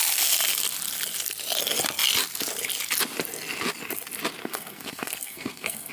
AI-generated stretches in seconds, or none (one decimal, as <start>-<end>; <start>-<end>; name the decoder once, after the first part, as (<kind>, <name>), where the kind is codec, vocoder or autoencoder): 4.4-5.9 (codec, SNAC)